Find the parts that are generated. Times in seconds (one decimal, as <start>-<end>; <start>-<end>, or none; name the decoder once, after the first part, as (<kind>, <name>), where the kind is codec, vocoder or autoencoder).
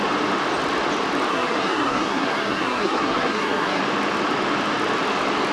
1.3-3.8 (codec, SNAC)